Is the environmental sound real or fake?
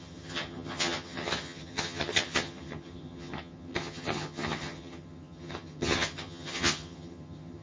fake